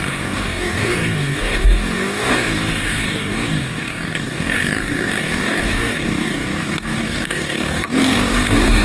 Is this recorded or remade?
remade